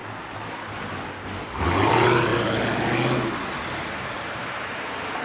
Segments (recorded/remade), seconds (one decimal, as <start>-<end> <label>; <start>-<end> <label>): 0.0-1.9 recorded; 1.9-2.3 remade; 2.3-3.6 recorded; 3.6-5.2 remade